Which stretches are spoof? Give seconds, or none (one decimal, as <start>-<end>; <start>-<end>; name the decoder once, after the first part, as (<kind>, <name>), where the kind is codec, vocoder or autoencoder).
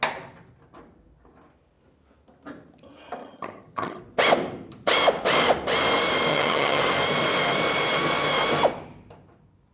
3.2-4.0 (vocoder, HiFi-GAN); 6.3-6.8